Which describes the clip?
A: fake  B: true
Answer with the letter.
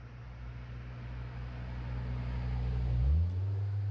B